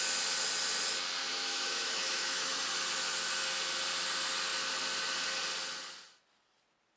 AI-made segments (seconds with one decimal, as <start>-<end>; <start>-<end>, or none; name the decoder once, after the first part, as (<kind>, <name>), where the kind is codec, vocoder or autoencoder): 1.2-2.5 (autoencoder, DAC-VAE)